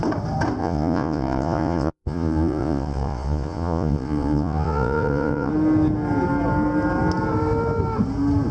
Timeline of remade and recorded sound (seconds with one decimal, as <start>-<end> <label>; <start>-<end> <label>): 0.0-0.6 recorded; 0.6-5.5 remade; 5.5-8.5 recorded